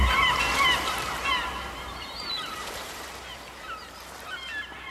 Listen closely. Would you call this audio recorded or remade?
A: remade